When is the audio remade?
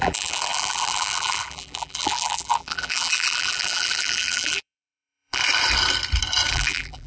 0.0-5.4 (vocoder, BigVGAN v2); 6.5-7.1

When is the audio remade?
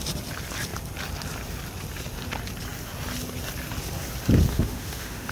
4.5-5.3 (autoencoder, DAC-VAE)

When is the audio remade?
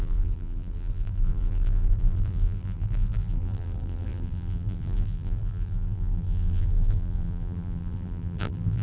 0.0-8.8 (vocoder, BigVGAN v2)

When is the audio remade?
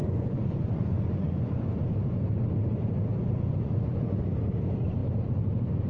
0.0-1.8 (vocoder, Vocos); 3.1-4.2